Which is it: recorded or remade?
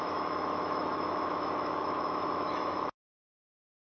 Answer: remade